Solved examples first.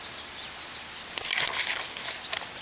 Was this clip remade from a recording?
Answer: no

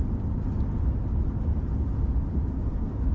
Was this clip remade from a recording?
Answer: no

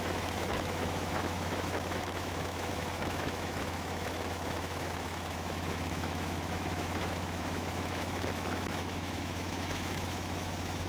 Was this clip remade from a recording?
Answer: yes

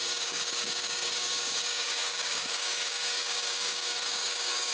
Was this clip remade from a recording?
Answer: yes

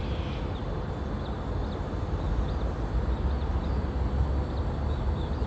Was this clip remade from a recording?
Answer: no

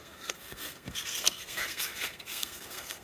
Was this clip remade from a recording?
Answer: yes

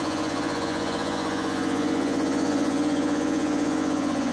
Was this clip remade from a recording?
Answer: yes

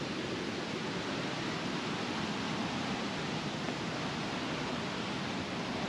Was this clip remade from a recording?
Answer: no